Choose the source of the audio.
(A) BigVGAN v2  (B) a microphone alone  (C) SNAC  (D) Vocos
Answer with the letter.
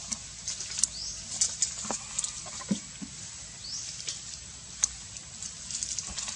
B